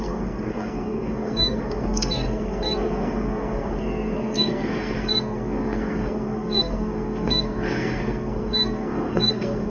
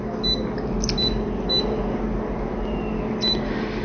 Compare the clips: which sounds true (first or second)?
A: second